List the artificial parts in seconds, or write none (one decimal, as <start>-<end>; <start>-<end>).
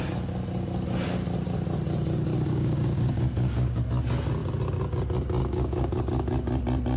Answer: 2.5-3.8; 5.4-6.0